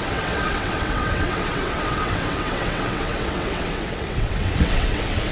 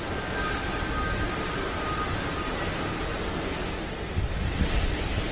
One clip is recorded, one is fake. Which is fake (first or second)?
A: first